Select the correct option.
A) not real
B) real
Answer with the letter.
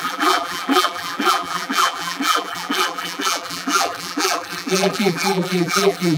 A